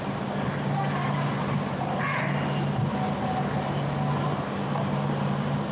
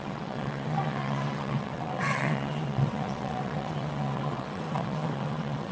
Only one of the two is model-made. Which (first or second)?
second